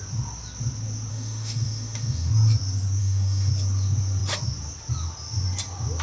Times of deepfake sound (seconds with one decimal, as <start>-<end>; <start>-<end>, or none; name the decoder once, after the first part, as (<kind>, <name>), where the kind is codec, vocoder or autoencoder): 1.1-2.3 (autoencoder, DAC-VAE); 3.0-3.5

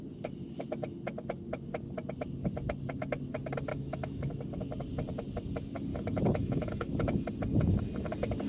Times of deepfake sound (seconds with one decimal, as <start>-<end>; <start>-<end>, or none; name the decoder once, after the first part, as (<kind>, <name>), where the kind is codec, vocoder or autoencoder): 3.7-4.3 (autoencoder, DAC-VAE); 5.9-7.3

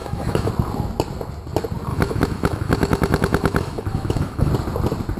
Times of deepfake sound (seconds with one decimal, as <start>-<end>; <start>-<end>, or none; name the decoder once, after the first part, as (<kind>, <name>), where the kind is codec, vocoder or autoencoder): 0.0-0.5 (autoencoder, DAC-VAE); 1.9-4.5

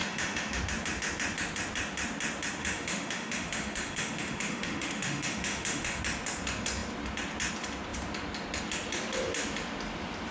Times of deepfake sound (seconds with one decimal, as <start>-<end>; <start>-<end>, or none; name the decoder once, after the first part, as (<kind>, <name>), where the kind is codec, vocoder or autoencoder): 0.0-0.6 (autoencoder, DAC-VAE); 2.6-6.0

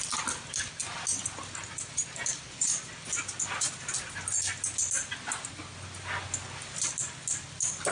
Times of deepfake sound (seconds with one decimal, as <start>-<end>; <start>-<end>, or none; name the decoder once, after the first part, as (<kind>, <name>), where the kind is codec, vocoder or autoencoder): none

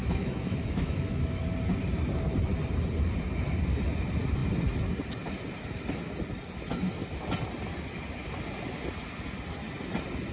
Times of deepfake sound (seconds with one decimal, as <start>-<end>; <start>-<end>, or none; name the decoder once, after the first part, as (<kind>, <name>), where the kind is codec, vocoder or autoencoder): 0.0-1.4 (autoencoder, DAC-VAE)

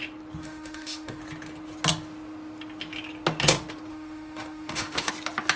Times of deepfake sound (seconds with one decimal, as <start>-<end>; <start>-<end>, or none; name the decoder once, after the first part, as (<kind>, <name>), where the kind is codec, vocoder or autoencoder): 0.4-1.2 (autoencoder, DAC-VAE); 3.9-5.1

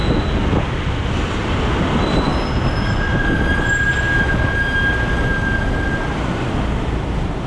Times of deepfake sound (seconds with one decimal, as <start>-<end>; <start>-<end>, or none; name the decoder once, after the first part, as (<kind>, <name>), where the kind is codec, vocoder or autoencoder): none